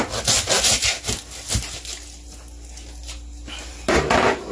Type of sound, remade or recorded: recorded